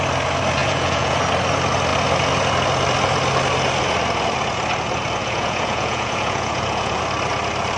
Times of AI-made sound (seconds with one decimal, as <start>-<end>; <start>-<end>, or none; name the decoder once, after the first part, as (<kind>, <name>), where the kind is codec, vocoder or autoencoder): 0.6-1.2 (vocoder, Vocos); 5.2-7.0